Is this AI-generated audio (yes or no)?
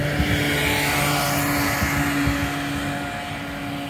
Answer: no